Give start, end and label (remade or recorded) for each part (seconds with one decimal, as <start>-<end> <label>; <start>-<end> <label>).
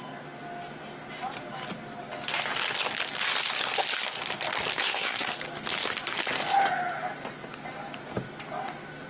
0.0-4.8 recorded; 4.8-5.3 remade; 5.3-9.1 recorded